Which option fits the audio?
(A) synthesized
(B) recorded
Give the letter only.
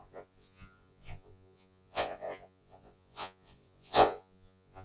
A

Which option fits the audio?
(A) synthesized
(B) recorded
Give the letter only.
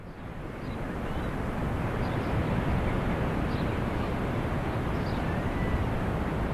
B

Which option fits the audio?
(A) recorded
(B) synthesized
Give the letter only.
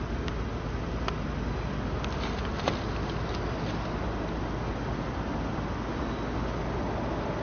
A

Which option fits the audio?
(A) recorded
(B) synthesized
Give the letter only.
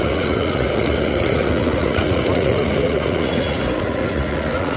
B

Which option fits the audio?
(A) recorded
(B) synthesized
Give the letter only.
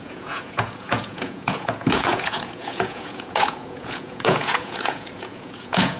B